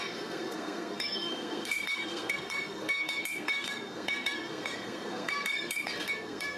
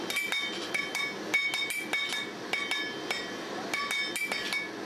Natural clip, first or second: second